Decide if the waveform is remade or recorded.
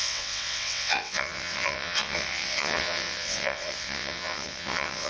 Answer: remade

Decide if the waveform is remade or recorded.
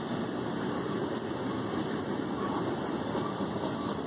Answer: recorded